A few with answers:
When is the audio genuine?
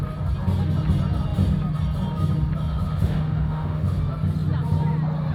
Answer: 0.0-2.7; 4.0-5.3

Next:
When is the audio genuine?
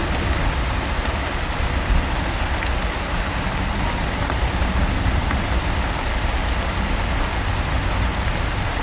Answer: 0.0-8.8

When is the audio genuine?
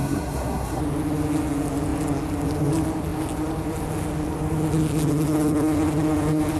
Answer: 0.8-6.6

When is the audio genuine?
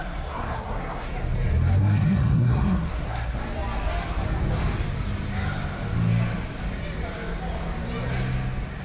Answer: 1.1-1.8; 3.4-8.8